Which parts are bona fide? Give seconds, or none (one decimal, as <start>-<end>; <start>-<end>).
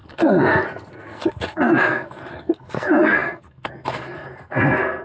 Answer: none